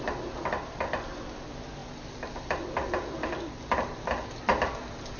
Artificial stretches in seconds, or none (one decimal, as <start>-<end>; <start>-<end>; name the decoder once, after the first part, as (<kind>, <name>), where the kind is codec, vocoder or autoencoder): none

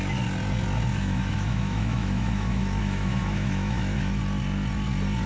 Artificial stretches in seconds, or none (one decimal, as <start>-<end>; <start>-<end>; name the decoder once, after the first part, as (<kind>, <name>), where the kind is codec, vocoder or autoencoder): 0.9-4.1 (autoencoder, DAC-VAE)

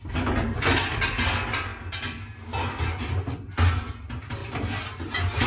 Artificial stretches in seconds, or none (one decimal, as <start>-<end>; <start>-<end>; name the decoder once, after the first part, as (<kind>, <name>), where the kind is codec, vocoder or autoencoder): none

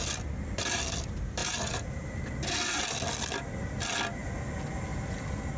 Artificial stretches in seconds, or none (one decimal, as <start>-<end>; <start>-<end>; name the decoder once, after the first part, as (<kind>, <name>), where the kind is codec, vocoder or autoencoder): 1.4-2.2 (vocoder, BigVGAN v2)

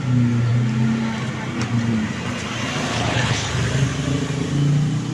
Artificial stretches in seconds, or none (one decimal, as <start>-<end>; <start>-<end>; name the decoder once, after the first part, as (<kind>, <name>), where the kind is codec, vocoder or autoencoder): 2.9-3.5 (codec, HILCodec)

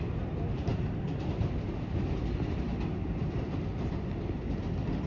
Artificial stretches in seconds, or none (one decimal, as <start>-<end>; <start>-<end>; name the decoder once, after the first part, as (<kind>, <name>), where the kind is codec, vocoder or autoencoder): none